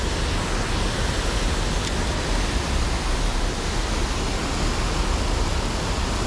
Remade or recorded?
recorded